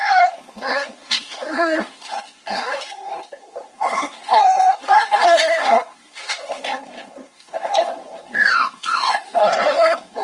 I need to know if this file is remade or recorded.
remade